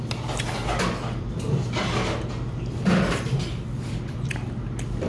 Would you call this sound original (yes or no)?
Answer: yes